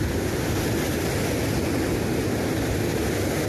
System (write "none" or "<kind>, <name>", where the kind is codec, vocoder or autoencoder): none